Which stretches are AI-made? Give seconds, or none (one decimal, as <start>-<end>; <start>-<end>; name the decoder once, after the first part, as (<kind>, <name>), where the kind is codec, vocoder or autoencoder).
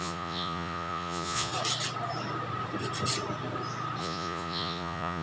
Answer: 0.0-1.5 (vocoder, Vocos); 4.0-5.2